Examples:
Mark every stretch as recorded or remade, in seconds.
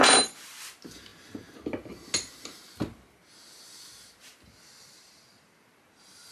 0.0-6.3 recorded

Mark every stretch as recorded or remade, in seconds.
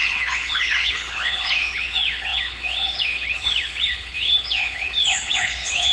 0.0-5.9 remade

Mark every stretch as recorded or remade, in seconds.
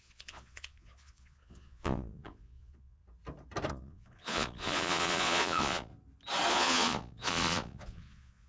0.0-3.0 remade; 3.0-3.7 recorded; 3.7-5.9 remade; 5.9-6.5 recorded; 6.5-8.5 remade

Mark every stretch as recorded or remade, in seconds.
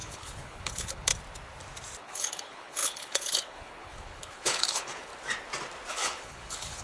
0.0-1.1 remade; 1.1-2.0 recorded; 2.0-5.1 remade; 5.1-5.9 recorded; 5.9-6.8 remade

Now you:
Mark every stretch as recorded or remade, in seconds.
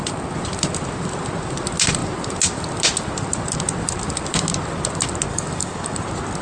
0.0-5.3 recorded; 5.3-6.0 remade; 6.0-6.4 recorded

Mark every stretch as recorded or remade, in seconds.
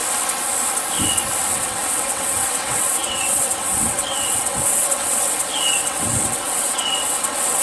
0.0-1.5 recorded; 1.5-7.6 remade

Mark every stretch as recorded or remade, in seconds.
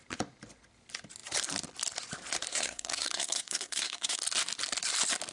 0.0-2.5 recorded; 2.5-4.2 remade; 4.2-5.3 recorded